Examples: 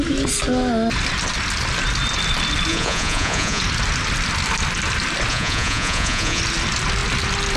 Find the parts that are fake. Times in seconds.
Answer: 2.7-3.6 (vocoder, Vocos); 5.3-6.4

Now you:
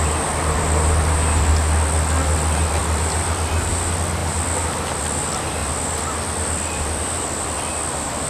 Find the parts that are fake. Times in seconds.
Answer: none

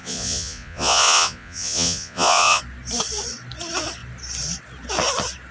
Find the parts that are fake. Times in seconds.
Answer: 0.0-2.6 (vocoder, Vocos)

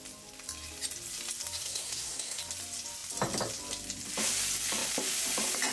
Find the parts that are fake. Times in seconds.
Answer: 1.6-2.4 (codec, SNAC)